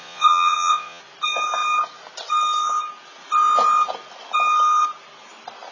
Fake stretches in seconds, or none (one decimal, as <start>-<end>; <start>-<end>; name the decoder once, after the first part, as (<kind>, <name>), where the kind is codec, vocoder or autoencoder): 0.0-1.0 (vocoder, Vocos)